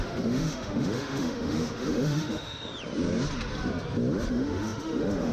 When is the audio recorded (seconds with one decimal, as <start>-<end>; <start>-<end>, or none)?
2.7-4.3